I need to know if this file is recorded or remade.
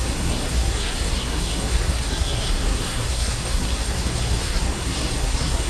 remade